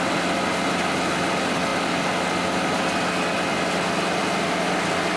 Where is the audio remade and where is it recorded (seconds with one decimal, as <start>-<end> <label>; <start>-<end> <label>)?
0.0-5.2 recorded